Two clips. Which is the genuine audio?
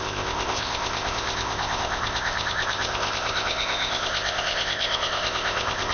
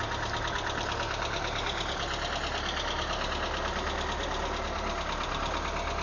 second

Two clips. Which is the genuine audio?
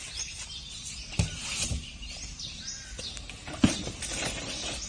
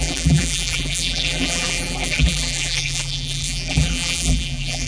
first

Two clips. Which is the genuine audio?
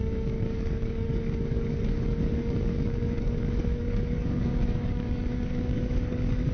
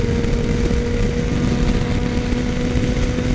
second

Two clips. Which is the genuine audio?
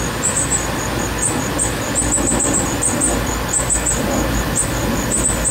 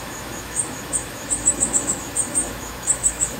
first